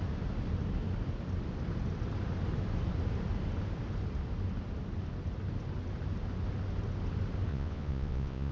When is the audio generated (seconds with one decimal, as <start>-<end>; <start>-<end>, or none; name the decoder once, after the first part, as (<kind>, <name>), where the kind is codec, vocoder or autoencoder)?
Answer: 7.5-8.5 (vocoder, Vocos)